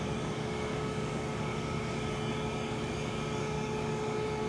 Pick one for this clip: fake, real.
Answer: fake